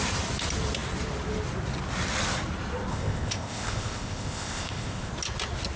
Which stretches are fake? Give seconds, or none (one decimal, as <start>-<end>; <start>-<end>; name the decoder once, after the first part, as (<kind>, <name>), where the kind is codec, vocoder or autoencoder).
2.9-5.1 (codec, ZipCodec)